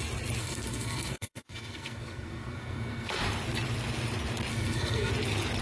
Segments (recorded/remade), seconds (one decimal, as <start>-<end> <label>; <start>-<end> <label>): 0.0-0.4 recorded; 0.4-3.2 remade; 3.2-4.5 recorded; 4.5-5.1 remade; 5.1-5.6 recorded